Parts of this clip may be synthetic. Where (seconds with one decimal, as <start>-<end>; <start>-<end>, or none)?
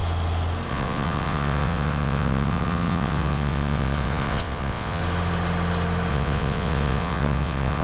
0.7-5.0; 6.1-7.8